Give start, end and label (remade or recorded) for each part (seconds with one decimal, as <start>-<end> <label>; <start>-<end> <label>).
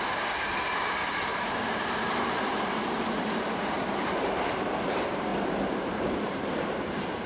0.0-5.3 remade; 5.3-5.9 recorded; 5.9-7.3 remade